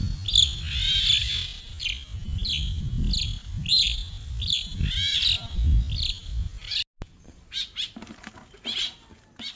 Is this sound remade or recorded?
recorded